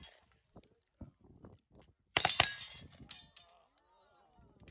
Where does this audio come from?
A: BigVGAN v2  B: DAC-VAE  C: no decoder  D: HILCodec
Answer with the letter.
A